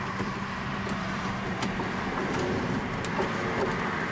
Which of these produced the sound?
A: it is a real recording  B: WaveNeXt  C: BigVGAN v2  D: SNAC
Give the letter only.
C